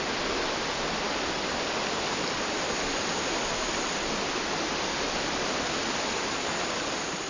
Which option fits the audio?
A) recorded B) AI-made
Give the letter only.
A